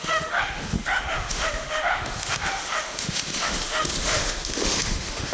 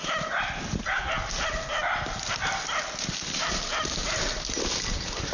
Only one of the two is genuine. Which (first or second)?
second